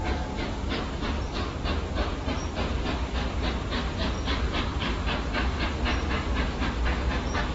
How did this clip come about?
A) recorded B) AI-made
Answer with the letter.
A